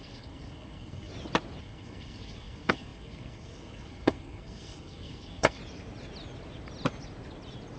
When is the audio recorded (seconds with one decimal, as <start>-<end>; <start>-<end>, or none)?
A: 1.1-1.6; 5.6-7.8